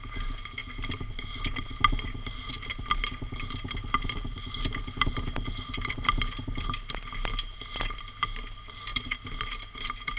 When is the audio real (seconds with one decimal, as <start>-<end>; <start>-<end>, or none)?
0.0-10.2